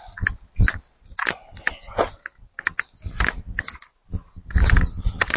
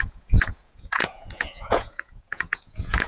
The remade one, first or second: second